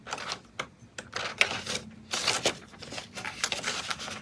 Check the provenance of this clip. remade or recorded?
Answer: recorded